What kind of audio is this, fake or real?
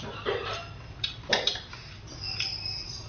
real